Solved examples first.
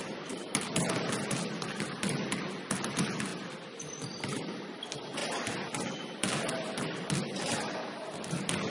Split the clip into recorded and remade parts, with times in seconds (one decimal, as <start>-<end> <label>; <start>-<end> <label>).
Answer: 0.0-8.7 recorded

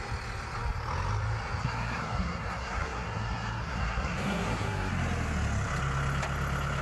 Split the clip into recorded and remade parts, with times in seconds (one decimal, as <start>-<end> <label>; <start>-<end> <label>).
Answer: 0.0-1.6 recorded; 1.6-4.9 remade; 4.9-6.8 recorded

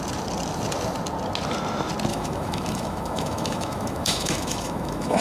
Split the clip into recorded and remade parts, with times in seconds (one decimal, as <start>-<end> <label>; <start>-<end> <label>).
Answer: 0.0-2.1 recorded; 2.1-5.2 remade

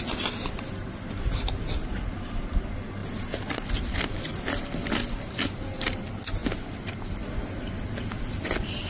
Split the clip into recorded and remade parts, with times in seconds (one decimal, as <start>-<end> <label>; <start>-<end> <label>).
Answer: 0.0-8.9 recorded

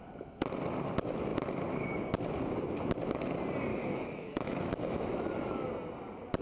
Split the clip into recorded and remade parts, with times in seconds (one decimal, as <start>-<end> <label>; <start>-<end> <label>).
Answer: 0.0-3.7 recorded; 3.7-5.7 remade; 5.7-6.4 recorded

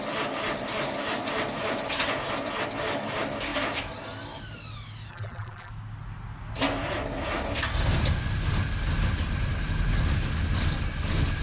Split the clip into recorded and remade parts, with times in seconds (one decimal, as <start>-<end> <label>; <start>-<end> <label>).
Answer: 0.0-5.1 recorded; 5.1-5.7 remade; 5.7-11.4 recorded

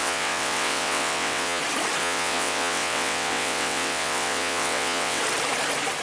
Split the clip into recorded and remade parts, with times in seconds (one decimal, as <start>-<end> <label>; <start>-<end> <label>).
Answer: 0.0-1.6 remade; 1.6-2.0 recorded; 2.0-5.2 remade; 5.2-6.0 recorded

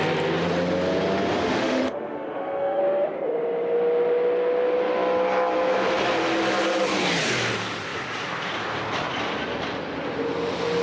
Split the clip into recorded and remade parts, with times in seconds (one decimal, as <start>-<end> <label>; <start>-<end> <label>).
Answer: 0.0-1.4 recorded; 1.4-2.8 remade; 2.8-10.8 recorded